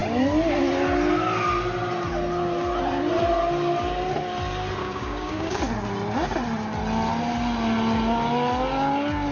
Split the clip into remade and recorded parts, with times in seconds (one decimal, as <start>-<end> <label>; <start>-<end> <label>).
0.0-4.8 recorded; 4.8-5.6 remade; 5.6-9.3 recorded